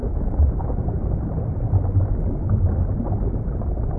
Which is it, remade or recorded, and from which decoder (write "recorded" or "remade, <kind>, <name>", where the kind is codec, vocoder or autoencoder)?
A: recorded